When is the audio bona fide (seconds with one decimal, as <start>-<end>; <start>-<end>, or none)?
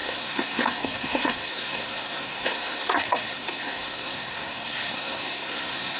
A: none